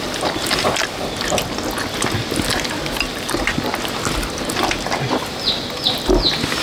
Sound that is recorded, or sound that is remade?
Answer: recorded